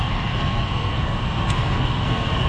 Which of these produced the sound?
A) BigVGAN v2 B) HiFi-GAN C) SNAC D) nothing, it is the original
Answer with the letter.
C